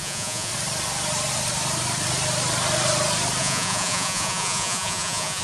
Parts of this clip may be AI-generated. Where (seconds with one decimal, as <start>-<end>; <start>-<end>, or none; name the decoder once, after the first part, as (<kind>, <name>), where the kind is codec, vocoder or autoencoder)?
0.0-0.5 (vocoder, Vocos); 3.4-5.4